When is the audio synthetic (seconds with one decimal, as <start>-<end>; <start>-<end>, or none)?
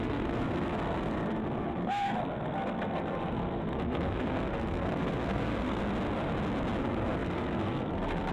0.0-5.8; 6.8-8.3